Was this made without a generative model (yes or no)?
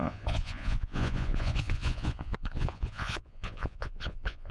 no